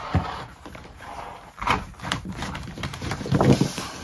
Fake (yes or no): yes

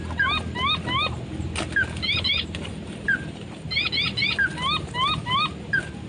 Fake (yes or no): no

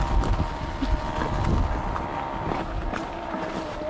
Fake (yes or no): no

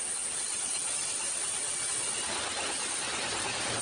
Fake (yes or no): yes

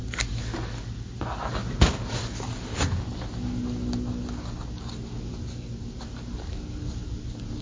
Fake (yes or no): no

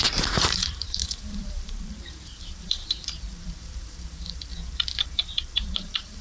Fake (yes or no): yes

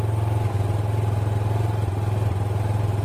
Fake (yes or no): no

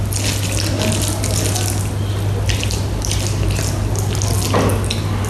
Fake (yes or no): no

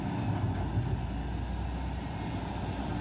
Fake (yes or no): no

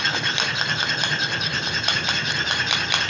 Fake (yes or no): yes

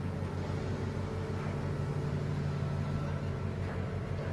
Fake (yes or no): no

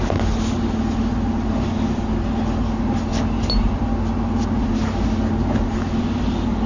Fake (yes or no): no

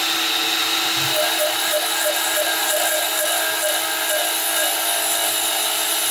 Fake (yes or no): no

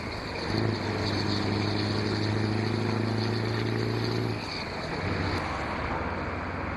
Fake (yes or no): no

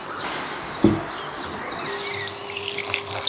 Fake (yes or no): no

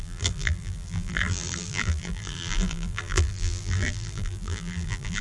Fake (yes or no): yes